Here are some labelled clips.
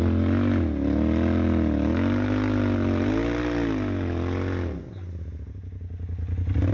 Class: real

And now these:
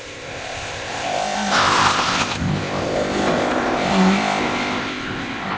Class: fake